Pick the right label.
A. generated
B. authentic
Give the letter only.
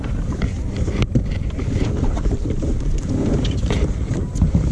A